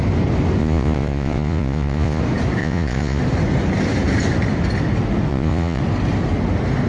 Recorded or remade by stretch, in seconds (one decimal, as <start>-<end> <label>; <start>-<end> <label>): 0.0-0.6 recorded; 0.6-2.2 remade; 2.2-2.6 recorded; 2.6-3.2 remade; 3.2-5.3 recorded; 5.3-5.8 remade; 5.8-6.9 recorded